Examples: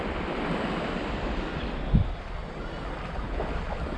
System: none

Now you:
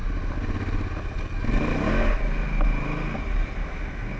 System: none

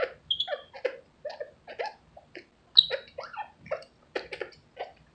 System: none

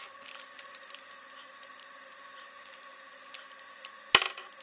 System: none